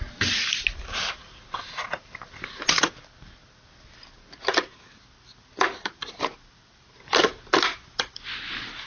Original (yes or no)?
yes